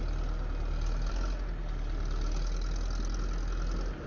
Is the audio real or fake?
real